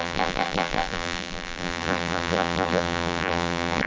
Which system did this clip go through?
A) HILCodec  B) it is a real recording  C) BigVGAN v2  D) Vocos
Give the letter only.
C